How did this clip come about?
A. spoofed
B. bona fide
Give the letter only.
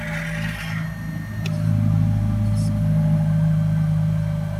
B